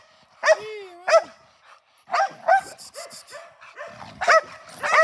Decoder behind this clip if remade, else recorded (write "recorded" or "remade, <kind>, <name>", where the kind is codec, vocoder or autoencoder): recorded